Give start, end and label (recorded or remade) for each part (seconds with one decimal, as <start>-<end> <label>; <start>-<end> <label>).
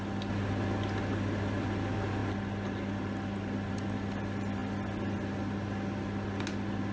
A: 0.0-6.9 recorded